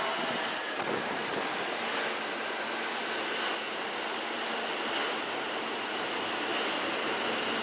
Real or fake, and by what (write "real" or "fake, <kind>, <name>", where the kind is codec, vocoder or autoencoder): real